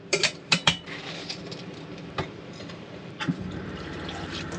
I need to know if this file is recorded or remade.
remade